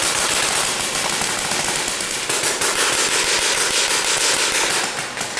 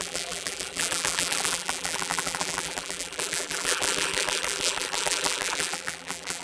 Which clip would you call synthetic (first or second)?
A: second